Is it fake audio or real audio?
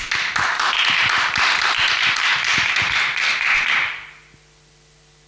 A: real